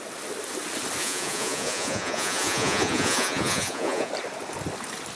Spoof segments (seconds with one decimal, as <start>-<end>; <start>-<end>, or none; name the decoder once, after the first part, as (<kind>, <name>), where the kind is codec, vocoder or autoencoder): 1.0-4.1 (vocoder, Vocos)

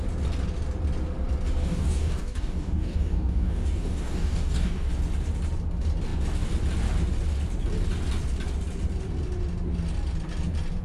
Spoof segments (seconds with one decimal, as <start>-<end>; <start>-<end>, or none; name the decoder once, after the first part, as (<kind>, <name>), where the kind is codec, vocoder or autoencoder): 1.7-4.9 (codec, DAC)

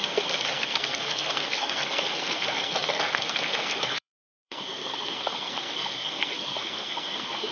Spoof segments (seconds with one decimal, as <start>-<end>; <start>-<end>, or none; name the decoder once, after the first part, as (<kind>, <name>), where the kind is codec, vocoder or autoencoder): 0.0-7.5 (codec, SNAC)

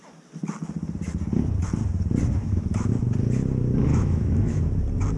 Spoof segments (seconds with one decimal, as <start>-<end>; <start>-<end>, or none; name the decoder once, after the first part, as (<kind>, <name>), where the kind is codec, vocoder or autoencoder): 2.4-2.9 (autoencoder, DAC-VAE); 3.9-4.6